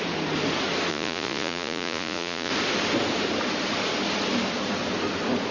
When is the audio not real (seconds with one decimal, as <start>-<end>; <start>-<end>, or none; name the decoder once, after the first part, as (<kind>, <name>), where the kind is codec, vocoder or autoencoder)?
0.9-2.5 (vocoder, Vocos)